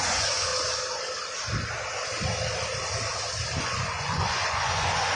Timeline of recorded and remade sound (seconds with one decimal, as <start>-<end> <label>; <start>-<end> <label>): 0.0-0.5 remade; 0.5-3.6 recorded; 3.6-5.1 remade